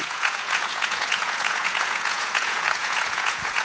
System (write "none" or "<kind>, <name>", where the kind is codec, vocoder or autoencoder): vocoder, Vocos